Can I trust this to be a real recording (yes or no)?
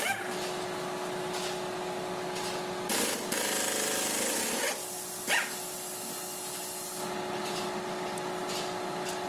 yes